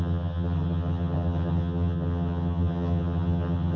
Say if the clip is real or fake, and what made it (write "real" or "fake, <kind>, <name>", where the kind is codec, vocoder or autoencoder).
fake, vocoder, HiFi-GAN